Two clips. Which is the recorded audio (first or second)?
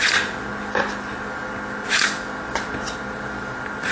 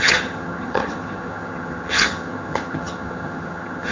first